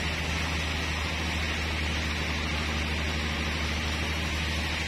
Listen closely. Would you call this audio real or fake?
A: real